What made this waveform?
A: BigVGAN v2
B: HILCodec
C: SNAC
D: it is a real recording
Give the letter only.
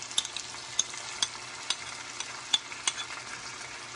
D